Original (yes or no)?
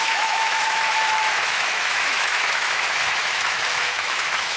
no